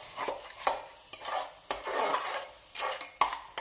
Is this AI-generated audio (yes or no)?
no